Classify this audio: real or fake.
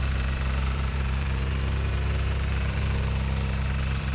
fake